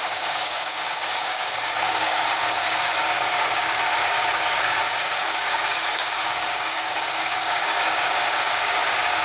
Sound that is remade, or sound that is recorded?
remade